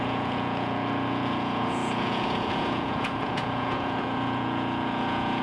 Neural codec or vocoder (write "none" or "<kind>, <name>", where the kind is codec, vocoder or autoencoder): vocoder, Vocos